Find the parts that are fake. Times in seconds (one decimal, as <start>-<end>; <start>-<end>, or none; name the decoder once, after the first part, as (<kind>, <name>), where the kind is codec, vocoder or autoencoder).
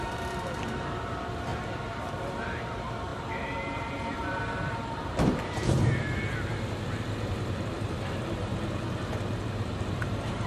0.0-1.5 (vocoder, BigVGAN v2); 2.0-10.5